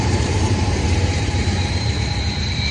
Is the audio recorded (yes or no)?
no